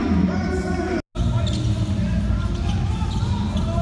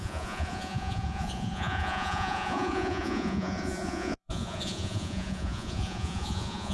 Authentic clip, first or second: first